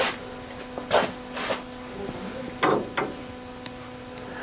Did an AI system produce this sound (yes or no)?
no